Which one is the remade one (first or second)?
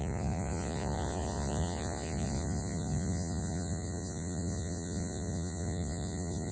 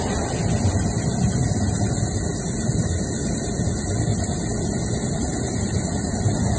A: first